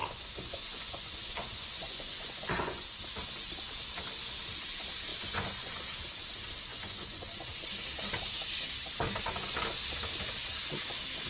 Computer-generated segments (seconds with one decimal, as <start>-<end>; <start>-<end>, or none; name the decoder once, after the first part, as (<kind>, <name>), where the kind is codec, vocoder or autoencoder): 0.0-3.0 (vocoder, Vocos); 5.1-5.8; 6.7-7.3